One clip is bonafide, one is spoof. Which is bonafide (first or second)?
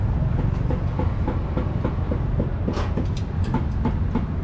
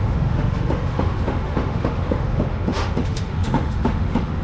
first